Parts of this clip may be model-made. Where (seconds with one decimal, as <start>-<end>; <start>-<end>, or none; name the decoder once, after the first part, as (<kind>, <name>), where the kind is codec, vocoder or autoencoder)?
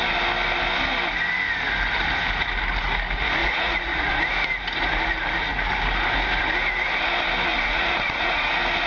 3.4-4.2 (vocoder, Vocos); 7.5-8.5